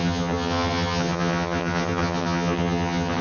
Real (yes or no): no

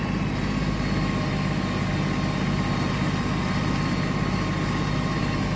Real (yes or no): yes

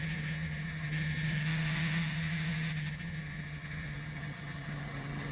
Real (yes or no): no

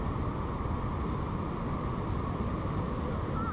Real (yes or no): yes